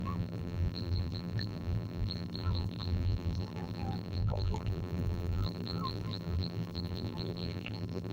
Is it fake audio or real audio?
fake